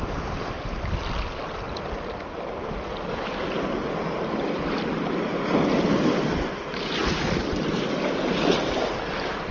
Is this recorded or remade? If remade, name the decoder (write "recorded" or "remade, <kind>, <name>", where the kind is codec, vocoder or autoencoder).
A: recorded